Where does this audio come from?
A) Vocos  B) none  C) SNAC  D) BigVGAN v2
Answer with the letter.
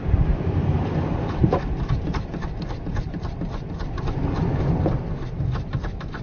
B